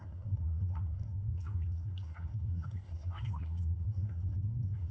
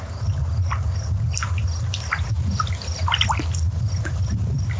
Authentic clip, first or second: second